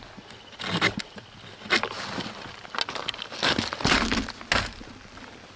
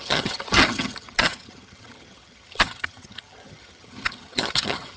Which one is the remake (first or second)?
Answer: second